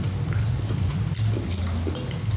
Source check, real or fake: real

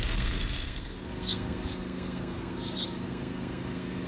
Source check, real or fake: fake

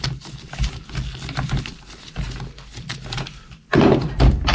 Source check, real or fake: real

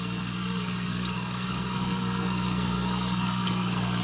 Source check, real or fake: fake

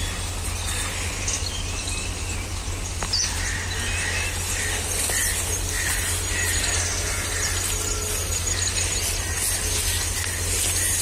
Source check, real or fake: real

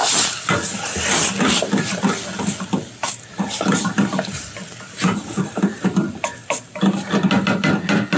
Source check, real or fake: real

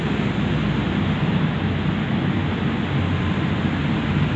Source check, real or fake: real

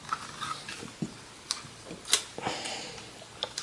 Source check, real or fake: real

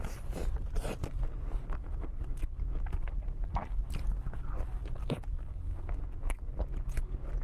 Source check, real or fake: real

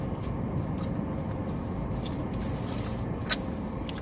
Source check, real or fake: real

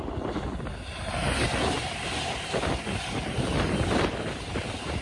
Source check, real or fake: real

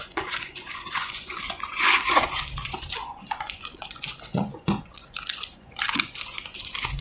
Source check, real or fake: fake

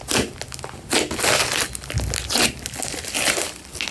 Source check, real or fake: real